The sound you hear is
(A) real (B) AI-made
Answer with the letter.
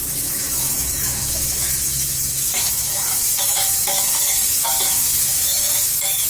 B